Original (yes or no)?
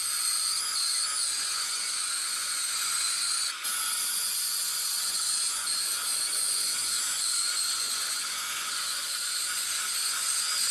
no